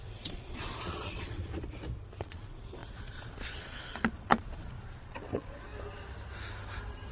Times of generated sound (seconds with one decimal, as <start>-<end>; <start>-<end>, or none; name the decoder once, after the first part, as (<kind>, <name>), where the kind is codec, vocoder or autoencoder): 0.0-1.4 (vocoder, Vocos); 2.2-5.7